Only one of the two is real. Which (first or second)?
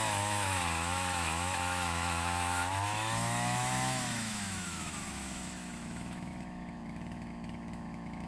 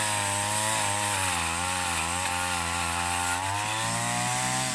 second